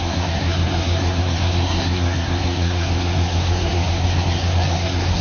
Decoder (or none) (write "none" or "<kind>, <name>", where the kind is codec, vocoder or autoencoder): codec, SNAC